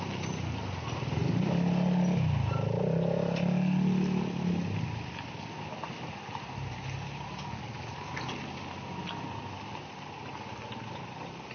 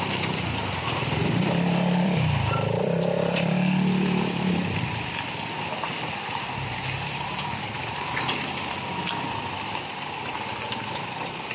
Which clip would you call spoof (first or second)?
second